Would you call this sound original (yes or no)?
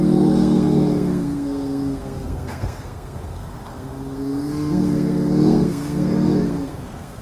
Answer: no